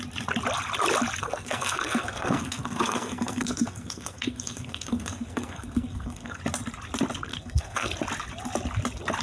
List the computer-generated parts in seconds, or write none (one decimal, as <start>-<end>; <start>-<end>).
1.2-6.4; 7.3-7.9

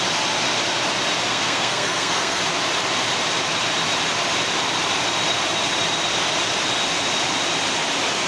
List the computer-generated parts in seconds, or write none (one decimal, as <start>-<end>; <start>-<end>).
1.3-2.4

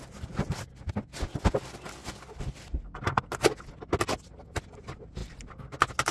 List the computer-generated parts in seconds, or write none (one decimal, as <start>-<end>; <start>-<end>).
none

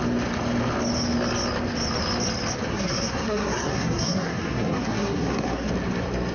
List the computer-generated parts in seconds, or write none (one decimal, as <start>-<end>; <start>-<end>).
2.7-5.7

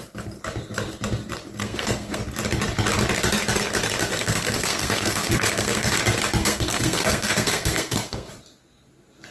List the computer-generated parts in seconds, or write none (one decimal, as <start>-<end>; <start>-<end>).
1.6-2.2; 4.1-6.0; 6.4-8.3